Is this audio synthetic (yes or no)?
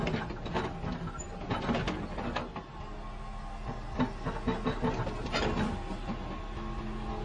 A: no